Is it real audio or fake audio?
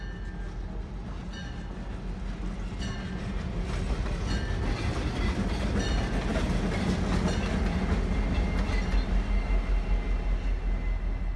real